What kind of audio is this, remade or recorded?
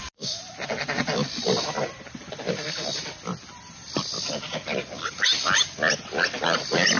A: recorded